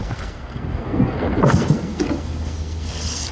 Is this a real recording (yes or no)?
no